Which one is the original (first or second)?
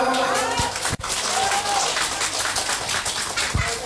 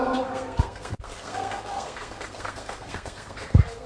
first